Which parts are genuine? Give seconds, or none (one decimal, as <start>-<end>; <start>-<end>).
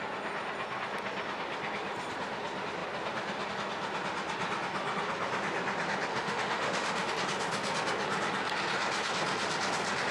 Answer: 0.0-6.1; 7.1-10.1